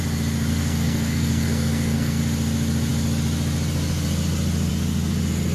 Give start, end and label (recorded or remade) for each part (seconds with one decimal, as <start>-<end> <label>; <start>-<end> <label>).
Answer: 0.0-0.5 recorded; 0.5-2.2 remade; 2.2-5.5 recorded